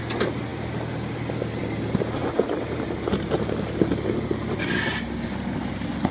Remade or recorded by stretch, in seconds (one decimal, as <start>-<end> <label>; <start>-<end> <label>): 0.0-6.1 recorded